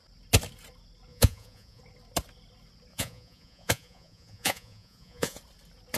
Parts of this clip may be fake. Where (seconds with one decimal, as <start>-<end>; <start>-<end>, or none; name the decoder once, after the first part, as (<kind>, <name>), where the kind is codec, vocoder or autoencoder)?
1.1-1.8 (vocoder, Vocos); 2.9-5.4